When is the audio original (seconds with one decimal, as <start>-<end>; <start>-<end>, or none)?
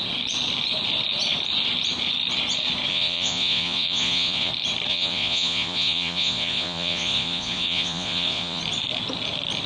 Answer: 0.0-2.9; 4.5-4.9; 8.6-9.7